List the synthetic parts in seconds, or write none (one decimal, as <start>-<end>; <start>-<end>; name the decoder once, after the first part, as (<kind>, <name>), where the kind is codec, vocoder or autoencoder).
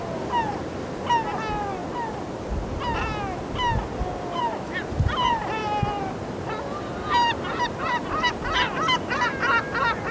none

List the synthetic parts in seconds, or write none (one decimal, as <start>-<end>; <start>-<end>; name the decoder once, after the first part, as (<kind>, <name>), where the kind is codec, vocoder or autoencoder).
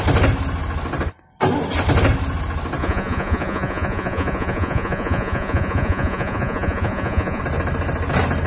2.8-7.4 (vocoder, Vocos)